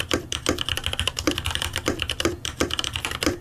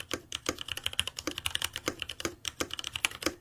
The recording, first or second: first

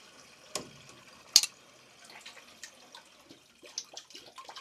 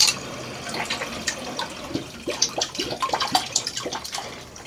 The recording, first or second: first